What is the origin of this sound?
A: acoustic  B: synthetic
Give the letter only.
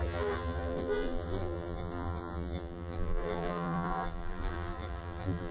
B